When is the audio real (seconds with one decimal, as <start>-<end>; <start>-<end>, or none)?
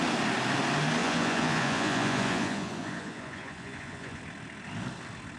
0.0-1.0; 4.2-5.4